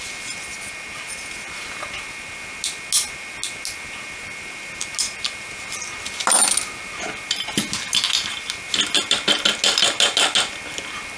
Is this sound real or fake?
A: real